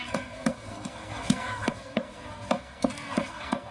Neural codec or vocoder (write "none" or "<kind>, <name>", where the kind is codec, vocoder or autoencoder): codec, SNAC